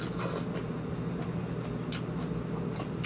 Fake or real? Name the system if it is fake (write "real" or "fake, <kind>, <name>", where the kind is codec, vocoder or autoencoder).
real